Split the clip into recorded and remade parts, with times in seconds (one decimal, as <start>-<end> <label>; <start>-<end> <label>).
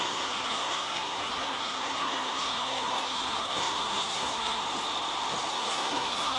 0.0-4.6 remade; 4.6-5.5 recorded; 5.5-6.4 remade